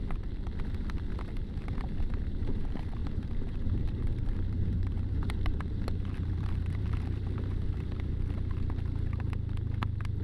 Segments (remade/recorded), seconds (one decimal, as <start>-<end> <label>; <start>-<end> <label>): 0.0-3.0 recorded; 3.0-8.1 remade; 8.1-10.2 recorded